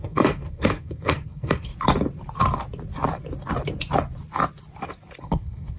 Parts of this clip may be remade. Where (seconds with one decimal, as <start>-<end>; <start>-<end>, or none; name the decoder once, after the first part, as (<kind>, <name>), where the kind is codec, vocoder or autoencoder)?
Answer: 0.0-1.7 (codec, SNAC); 5.2-5.8